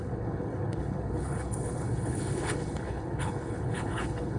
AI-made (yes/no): yes